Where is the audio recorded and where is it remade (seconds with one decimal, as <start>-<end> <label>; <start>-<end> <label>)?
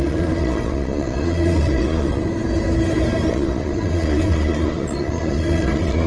0.0-2.2 remade; 2.2-3.3 recorded; 3.3-6.1 remade